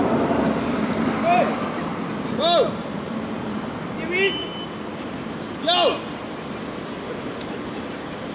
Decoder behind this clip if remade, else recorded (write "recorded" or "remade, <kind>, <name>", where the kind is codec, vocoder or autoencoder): recorded